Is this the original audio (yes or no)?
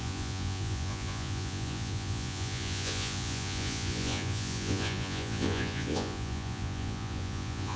no